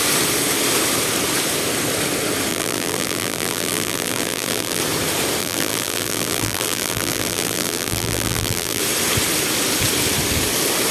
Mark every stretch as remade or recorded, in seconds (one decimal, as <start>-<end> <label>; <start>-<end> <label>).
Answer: 0.0-2.5 recorded; 2.5-4.8 remade; 4.8-5.4 recorded; 5.4-8.8 remade; 8.8-10.9 recorded